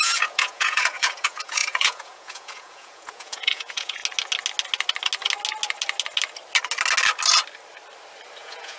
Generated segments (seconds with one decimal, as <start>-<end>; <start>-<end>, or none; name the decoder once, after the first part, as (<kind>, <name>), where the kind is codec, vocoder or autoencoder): 0.0-4.0 (vocoder, Vocos); 8.4-8.8